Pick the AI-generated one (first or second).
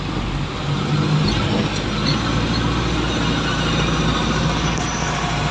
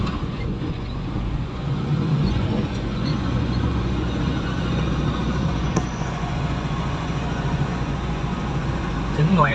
second